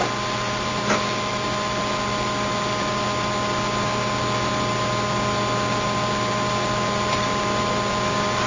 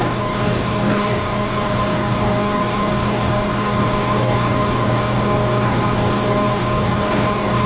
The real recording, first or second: first